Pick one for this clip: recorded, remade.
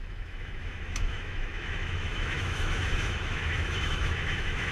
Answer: remade